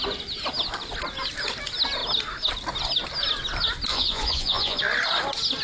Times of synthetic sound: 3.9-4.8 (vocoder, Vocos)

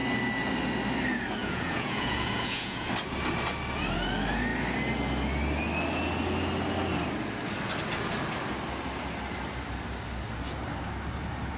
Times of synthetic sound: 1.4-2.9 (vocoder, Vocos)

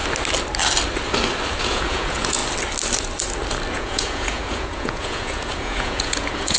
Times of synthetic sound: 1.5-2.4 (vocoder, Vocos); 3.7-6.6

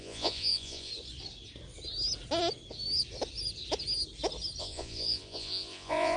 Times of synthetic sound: 0.0-0.9 (vocoder, Vocos); 4.6-6.2